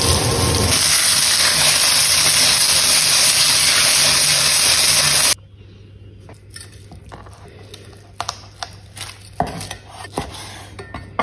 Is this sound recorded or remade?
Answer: recorded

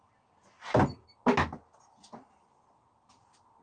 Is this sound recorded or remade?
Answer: recorded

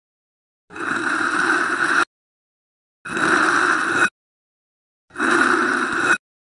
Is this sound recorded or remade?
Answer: recorded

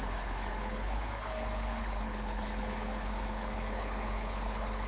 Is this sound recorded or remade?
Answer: remade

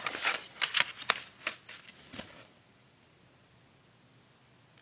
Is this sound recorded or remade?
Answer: recorded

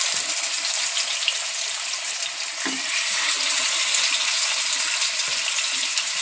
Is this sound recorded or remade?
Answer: recorded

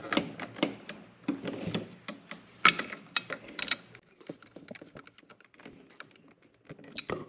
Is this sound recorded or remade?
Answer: recorded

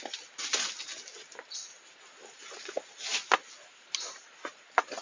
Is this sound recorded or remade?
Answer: recorded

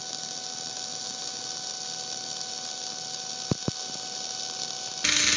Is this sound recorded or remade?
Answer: recorded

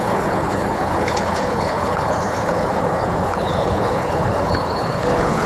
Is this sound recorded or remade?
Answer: remade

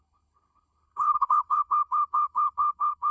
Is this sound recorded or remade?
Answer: remade